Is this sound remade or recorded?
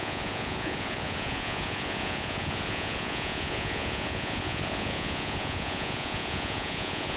remade